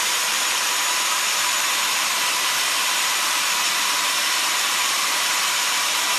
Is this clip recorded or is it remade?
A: remade